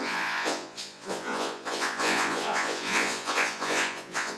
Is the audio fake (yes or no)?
yes